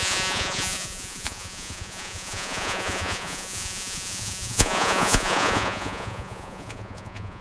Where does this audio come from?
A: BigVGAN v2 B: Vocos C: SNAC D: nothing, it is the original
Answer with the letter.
B